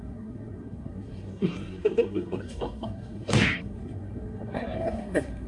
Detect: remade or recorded remade